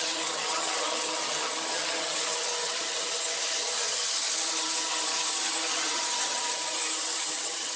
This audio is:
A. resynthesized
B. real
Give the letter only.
A